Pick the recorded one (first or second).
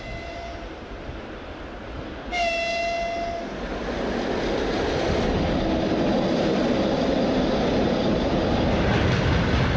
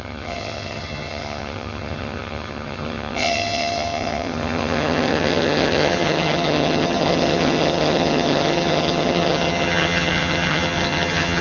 first